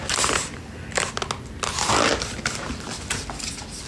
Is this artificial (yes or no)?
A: no